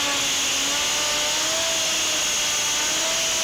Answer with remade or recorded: recorded